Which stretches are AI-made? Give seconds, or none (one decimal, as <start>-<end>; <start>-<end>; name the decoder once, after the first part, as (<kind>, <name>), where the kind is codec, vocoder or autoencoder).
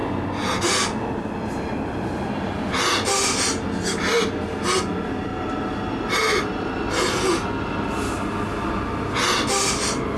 none